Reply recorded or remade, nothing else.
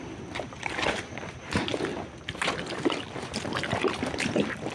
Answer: recorded